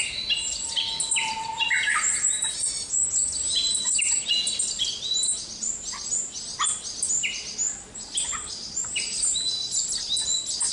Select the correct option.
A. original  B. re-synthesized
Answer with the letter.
A